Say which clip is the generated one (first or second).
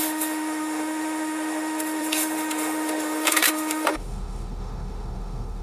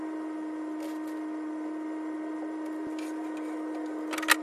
first